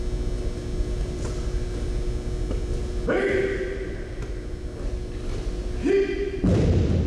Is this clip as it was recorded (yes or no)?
yes